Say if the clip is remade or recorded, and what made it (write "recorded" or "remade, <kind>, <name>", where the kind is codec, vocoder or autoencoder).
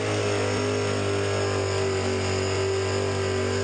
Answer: recorded